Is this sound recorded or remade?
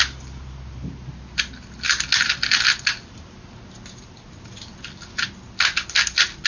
recorded